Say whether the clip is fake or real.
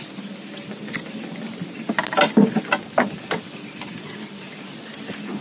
real